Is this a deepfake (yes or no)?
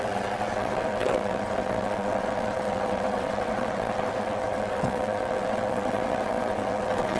yes